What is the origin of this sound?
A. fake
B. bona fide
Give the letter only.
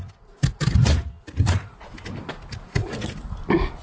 B